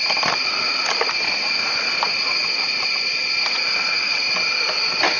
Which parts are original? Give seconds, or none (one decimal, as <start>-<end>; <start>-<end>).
0.0-5.2